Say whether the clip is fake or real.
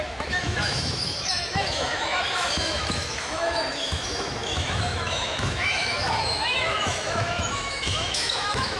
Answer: fake